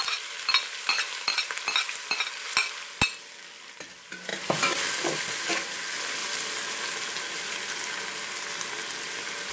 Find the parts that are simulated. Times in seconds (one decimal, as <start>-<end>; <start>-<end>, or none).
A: none